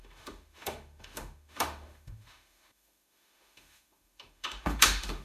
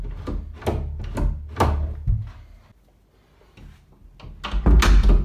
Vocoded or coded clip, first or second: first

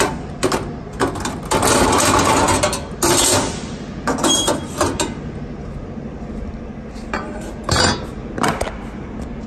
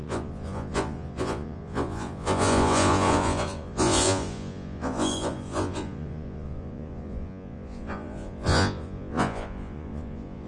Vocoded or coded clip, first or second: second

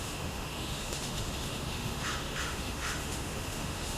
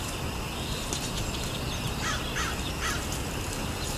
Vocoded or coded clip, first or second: first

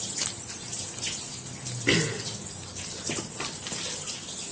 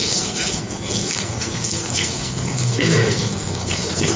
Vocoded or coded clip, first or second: second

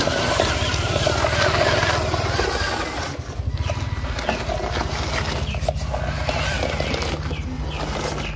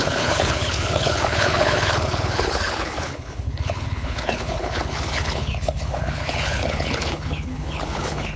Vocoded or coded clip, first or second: second